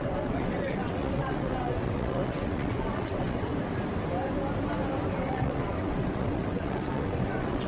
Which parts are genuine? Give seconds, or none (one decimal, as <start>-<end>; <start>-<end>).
3.5-5.1